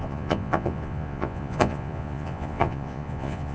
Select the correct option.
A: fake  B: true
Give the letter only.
A